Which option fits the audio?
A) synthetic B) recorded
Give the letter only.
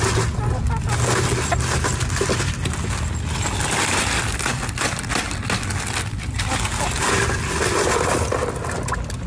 B